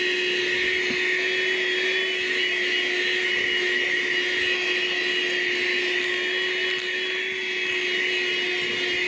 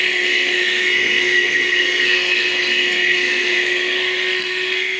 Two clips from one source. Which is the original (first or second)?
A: first